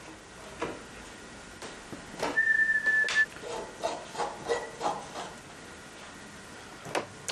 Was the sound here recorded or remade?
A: recorded